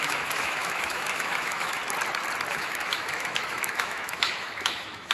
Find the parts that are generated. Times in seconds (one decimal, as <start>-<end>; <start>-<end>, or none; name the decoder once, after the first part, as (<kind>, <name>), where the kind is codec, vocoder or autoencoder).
0.0-1.8 (autoencoder, DAC-VAE); 2.5-5.1